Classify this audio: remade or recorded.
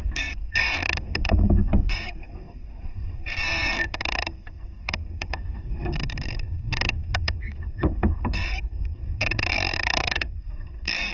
remade